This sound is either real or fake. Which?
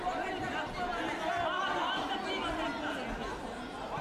real